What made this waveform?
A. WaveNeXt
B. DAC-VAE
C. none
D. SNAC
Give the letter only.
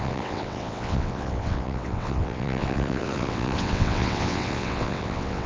A